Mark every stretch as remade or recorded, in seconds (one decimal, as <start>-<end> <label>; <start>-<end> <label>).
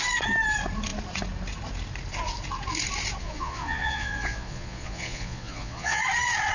0.0-3.2 recorded; 3.2-6.0 remade; 6.0-6.5 recorded